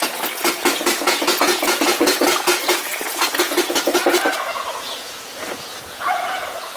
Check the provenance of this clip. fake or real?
fake